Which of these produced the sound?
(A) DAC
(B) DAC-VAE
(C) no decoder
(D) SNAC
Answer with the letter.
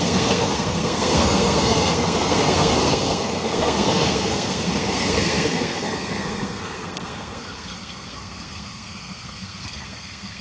D